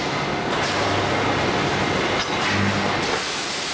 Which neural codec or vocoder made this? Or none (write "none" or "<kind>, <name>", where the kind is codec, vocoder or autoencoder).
none